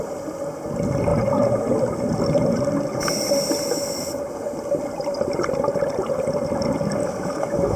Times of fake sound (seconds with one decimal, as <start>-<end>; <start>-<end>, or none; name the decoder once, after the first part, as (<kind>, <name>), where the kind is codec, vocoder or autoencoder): 7.0-7.8 (autoencoder, DAC-VAE)